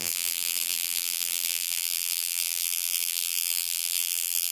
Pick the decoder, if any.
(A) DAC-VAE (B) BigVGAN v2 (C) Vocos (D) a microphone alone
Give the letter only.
B